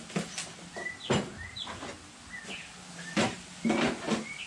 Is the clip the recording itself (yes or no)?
yes